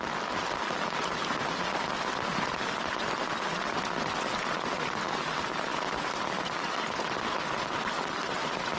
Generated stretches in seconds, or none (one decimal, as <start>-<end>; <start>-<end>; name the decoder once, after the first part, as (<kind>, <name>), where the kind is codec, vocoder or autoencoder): none

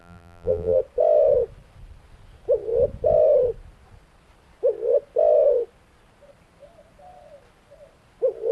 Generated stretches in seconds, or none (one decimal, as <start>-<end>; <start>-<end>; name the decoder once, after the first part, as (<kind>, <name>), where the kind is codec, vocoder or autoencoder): 0.0-0.8 (vocoder, BigVGAN v2)

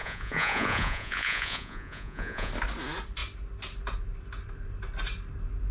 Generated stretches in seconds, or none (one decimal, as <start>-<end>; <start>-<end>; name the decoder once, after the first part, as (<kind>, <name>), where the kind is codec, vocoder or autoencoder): 0.0-2.5 (vocoder, Vocos)

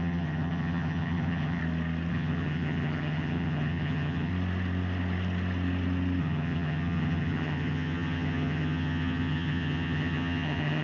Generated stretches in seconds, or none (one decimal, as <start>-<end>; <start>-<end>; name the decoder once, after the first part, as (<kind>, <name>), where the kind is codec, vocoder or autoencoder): 0.0-1.6 (vocoder, HiFi-GAN); 2.1-4.3; 6.2-10.8

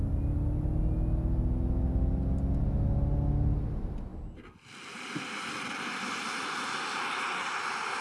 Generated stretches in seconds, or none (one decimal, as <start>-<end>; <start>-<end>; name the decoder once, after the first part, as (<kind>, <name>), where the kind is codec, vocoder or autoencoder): none

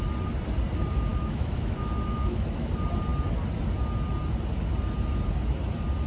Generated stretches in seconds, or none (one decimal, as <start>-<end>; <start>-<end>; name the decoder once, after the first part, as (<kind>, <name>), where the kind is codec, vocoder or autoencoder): 1.1-2.7 (autoencoder, DAC-VAE)

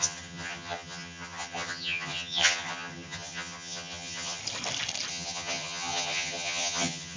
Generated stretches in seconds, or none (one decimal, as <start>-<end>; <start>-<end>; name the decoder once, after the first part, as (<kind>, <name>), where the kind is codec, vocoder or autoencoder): 0.0-4.4 (vocoder, HiFi-GAN); 5.1-7.2